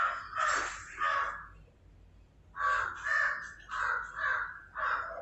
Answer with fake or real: real